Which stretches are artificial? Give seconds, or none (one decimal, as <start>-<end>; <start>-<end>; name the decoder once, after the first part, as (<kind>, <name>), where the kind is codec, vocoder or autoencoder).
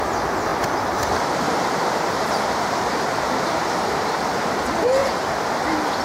0.5-4.1 (vocoder, BigVGAN v2); 5.0-5.5